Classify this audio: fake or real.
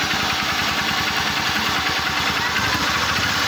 real